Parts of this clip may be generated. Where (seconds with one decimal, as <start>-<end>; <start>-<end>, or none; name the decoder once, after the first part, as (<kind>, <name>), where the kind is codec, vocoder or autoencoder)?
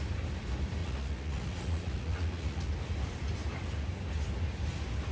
0.8-2.7 (vocoder, Vocos)